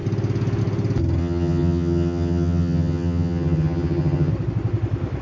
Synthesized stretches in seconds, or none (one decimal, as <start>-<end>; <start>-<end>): 1.2-4.3